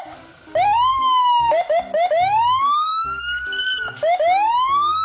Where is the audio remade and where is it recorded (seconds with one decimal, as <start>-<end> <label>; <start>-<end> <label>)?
0.0-0.9 recorded; 0.9-1.5 remade; 1.5-5.0 recorded

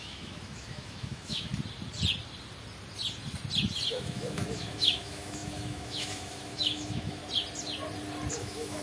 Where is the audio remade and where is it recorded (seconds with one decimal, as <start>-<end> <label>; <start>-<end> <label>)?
0.0-1.5 remade; 1.5-3.9 recorded; 3.9-7.2 remade; 7.2-8.3 recorded; 8.3-8.8 remade

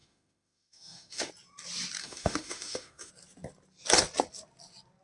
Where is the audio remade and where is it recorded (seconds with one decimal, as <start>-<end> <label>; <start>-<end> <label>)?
0.0-1.3 remade; 1.3-2.0 recorded; 2.0-3.1 remade; 3.1-5.0 recorded

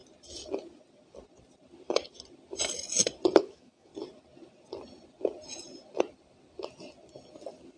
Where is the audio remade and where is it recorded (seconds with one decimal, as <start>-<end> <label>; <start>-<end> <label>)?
0.0-3.4 recorded; 3.4-3.9 remade; 3.9-7.8 recorded

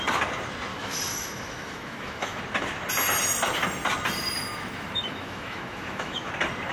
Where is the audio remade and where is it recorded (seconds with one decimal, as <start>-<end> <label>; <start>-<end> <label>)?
0.0-0.7 recorded; 0.7-2.4 remade; 2.4-4.4 recorded; 4.4-6.3 remade; 6.3-6.7 recorded

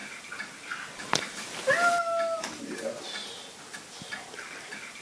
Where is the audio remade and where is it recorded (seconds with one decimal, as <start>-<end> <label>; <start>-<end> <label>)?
0.0-5.0 recorded